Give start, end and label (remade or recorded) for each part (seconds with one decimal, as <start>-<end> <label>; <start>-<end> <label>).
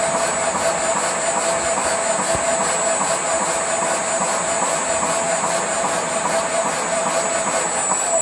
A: 0.0-8.2 recorded